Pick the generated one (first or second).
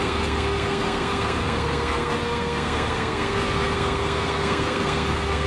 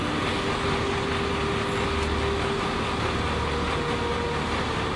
first